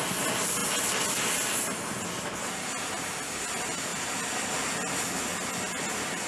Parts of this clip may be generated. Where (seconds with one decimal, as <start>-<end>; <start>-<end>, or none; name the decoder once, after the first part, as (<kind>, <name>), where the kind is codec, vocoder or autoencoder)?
none